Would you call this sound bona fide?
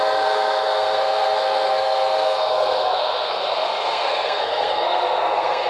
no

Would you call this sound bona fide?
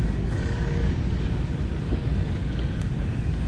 no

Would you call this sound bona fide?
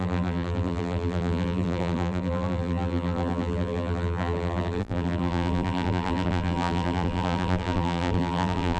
no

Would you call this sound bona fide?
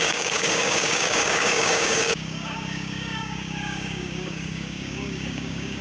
no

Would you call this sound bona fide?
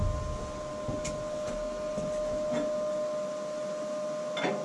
yes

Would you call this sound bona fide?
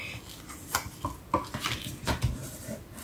yes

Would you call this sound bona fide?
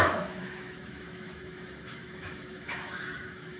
no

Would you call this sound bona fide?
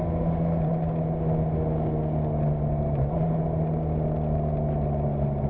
yes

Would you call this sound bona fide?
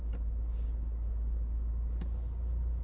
yes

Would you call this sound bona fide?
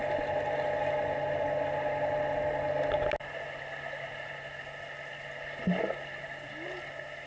yes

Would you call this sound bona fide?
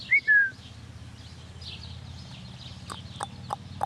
yes